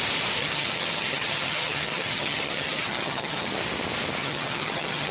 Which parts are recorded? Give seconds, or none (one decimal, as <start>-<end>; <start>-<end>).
0.0-0.4; 3.5-4.2